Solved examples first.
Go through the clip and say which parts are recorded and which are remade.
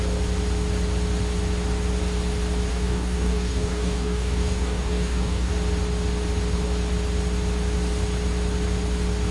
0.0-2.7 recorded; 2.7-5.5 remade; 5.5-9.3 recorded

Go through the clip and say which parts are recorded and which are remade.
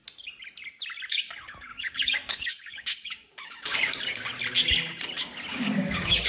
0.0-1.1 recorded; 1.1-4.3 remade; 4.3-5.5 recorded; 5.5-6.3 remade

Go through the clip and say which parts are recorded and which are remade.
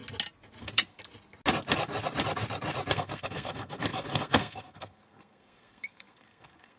0.0-0.6 recorded; 0.6-1.0 remade; 1.0-2.9 recorded; 2.9-6.8 remade